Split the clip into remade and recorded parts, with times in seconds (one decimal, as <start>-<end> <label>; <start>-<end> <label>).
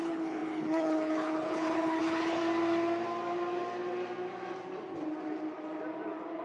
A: 0.0-2.4 remade; 2.4-6.4 recorded